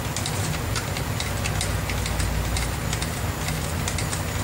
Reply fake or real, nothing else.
real